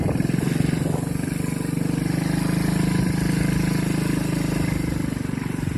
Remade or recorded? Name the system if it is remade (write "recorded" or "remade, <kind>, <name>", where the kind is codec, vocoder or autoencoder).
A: recorded